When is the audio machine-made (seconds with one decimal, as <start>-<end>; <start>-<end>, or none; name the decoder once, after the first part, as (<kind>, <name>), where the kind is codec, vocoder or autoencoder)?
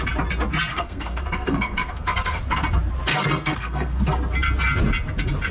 0.7-2.4 (codec, SNAC); 3.1-4.0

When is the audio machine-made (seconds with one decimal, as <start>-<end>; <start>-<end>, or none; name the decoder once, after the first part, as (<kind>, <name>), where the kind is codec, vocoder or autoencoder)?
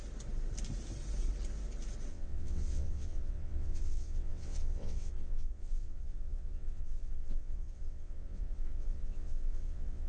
2.1-10.1 (vocoder, WaveNeXt)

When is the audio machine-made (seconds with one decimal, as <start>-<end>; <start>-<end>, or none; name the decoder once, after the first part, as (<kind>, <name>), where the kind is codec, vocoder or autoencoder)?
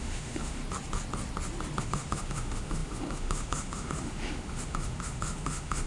0.0-0.6 (autoencoder, DAC-VAE); 1.8-5.9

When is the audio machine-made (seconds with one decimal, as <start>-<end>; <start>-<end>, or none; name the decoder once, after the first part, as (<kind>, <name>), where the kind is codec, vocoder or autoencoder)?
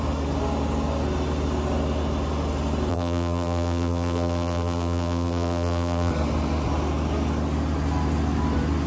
2.9-6.1 (vocoder, BigVGAN v2)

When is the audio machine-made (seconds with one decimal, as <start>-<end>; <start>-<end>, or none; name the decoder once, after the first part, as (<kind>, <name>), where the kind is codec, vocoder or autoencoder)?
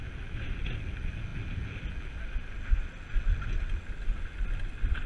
none